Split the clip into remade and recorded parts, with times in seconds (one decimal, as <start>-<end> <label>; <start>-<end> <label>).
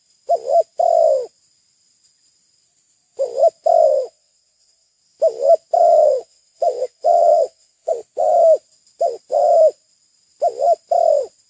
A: 0.0-3.9 recorded; 3.9-5.0 remade; 5.0-5.8 recorded; 5.8-7.9 remade; 7.9-11.5 recorded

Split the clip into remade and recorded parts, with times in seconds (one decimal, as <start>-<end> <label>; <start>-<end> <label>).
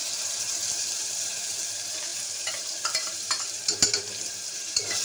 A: 0.0-5.0 remade